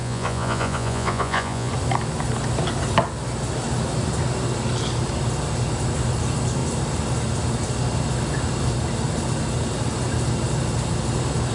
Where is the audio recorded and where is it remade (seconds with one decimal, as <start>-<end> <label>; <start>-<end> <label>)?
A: 0.0-1.7 remade; 1.7-11.5 recorded